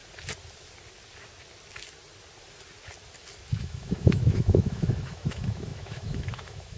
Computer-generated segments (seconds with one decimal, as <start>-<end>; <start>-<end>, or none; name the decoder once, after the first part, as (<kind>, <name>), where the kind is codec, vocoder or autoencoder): 3.6-6.8 (autoencoder, DAC-VAE)

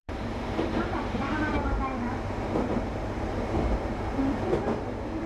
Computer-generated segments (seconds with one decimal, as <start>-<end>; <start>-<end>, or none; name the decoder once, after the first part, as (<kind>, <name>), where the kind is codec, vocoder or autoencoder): 0.0-1.3 (vocoder, BigVGAN v2); 2.7-4.2

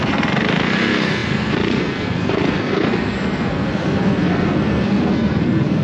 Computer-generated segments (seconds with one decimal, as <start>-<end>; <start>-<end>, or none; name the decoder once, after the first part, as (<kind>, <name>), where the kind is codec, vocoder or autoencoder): 0.0-5.8 (codec, SNAC)

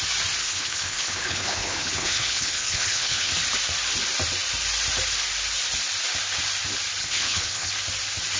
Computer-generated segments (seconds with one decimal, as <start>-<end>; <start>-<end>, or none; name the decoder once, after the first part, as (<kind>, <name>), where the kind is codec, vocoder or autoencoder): 0.4-3.3 (codec, HILCodec); 7.0-7.7

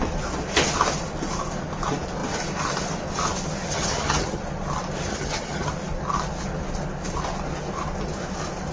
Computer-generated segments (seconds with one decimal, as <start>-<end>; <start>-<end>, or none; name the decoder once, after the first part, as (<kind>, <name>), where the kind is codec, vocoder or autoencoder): 3.7-4.4 (vocoder, HiFi-GAN); 5.1-5.7

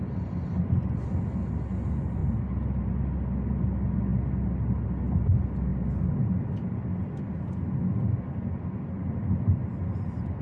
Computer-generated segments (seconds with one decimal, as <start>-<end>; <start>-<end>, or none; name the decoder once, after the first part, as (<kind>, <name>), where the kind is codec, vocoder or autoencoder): none